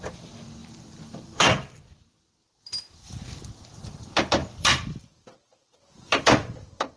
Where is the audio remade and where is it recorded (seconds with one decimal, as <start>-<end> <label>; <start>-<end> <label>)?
0.0-0.6 recorded; 0.6-3.5 remade; 3.5-4.4 recorded; 4.4-7.0 remade